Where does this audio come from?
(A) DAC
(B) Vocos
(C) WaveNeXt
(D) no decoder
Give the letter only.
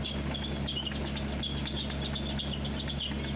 D